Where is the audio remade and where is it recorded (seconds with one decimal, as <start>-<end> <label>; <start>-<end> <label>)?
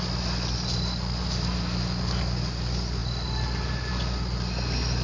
0.0-5.0 recorded